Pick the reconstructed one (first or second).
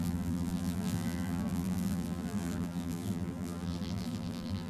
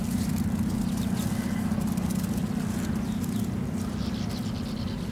first